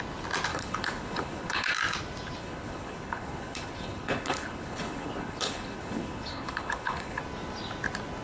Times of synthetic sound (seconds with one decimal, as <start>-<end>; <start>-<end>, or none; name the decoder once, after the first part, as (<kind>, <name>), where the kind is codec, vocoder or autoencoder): 0.5-1.7 (codec, HILCodec); 2.4-7.2